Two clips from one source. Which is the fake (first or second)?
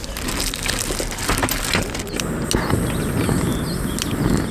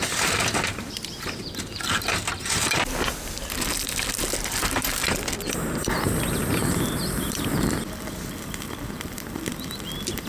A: second